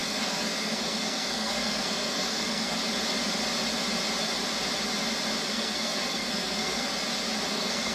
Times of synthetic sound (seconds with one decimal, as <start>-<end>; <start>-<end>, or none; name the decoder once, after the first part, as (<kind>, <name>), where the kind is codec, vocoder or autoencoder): 0.0-2.8 (codec, SNAC); 5.5-6.9; 7.5-7.9